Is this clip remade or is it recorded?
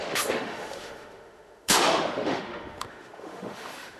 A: remade